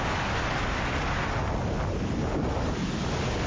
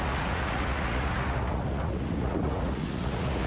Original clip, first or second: first